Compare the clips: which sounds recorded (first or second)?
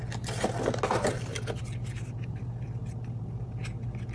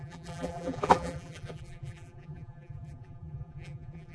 first